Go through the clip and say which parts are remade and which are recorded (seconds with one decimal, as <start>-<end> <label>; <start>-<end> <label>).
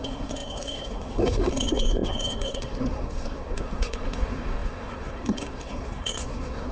0.0-6.7 remade